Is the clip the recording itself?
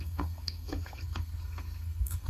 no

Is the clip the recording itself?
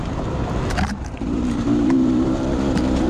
no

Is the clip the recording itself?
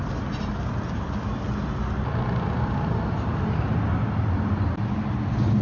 yes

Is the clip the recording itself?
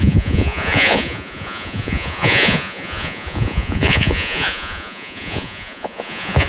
no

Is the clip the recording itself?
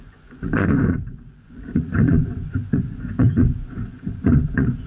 no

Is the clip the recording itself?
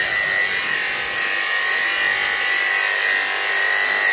yes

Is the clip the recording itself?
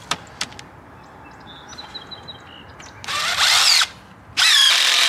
yes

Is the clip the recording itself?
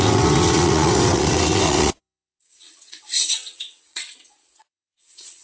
no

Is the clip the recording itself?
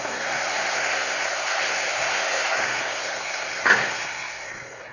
no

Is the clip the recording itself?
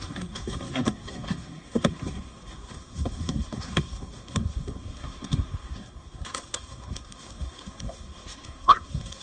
no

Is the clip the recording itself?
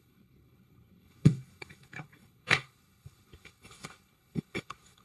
no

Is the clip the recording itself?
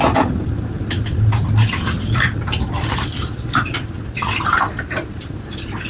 yes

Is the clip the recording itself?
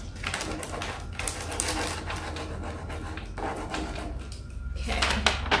yes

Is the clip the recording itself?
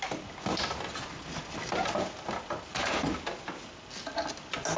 yes